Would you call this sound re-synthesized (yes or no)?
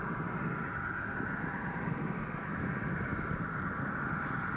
no